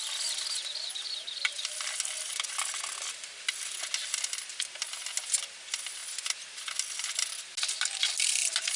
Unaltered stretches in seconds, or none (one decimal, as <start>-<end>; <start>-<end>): 0.0-8.8